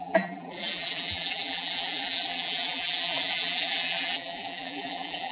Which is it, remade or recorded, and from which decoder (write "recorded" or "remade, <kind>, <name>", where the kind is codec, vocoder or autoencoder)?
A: remade, vocoder, BigVGAN v2